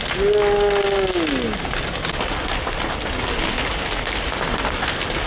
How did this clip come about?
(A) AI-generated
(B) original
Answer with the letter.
B